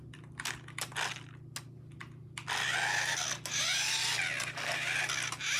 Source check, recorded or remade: recorded